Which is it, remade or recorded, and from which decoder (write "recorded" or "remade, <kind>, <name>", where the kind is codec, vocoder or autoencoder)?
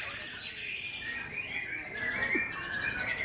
recorded